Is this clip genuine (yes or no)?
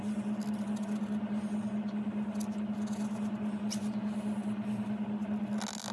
yes